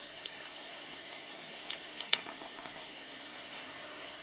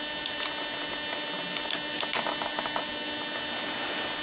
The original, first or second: second